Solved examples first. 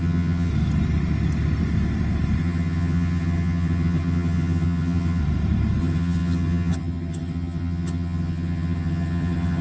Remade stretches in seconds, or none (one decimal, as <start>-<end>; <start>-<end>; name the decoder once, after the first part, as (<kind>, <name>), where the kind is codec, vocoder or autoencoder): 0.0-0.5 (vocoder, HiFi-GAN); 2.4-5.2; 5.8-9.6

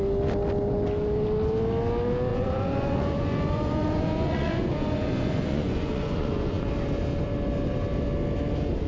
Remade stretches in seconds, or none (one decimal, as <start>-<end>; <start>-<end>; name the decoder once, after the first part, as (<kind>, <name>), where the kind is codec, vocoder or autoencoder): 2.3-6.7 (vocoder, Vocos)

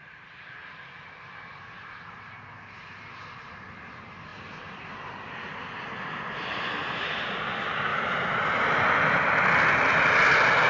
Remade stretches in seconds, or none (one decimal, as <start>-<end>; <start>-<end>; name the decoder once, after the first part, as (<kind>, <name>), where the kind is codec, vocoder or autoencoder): none

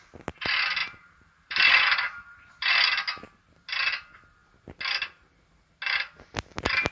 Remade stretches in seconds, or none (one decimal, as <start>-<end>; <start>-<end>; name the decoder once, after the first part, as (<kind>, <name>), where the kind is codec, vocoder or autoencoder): 0.8-2.7 (vocoder, BigVGAN v2)

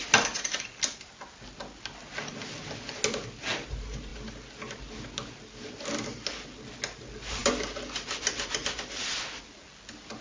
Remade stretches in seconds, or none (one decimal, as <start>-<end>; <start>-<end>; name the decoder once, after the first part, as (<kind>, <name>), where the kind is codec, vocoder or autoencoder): 7.4-8.2 (vocoder, BigVGAN v2)

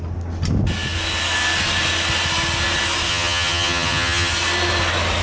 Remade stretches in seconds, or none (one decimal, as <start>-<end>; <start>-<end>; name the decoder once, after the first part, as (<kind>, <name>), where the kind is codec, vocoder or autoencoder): 3.1-4.3 (vocoder, HiFi-GAN)